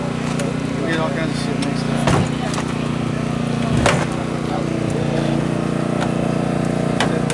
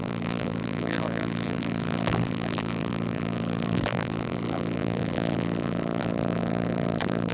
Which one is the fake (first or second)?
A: second